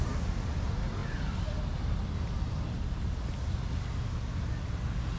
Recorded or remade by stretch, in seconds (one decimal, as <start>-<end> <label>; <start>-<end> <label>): 0.0-5.2 recorded